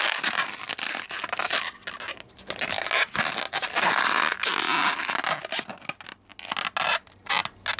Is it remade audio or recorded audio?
recorded